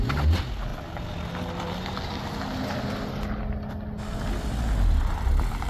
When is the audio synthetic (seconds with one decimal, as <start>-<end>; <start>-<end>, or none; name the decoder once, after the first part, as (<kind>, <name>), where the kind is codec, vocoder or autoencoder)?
none